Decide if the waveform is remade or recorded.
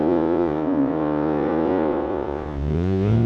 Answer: remade